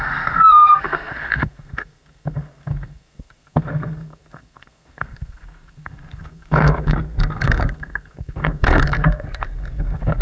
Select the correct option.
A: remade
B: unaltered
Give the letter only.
A